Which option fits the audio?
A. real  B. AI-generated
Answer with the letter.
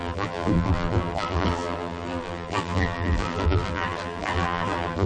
B